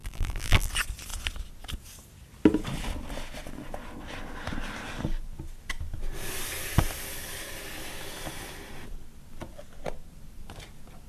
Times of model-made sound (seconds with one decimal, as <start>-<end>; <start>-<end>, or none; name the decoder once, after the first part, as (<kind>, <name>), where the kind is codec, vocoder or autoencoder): 0.0-0.7 (vocoder, BigVGAN v2)